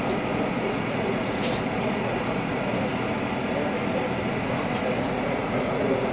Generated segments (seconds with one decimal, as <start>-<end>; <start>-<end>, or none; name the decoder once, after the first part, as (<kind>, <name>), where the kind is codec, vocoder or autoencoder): 0.0-2.9 (vocoder, Vocos); 4.3-6.1